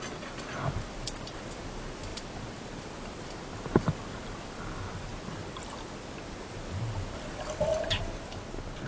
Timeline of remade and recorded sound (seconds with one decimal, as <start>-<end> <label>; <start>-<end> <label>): 0.0-8.9 recorded